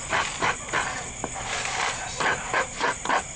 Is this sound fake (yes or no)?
no